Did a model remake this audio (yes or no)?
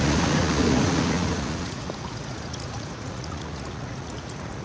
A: yes